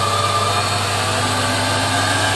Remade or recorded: recorded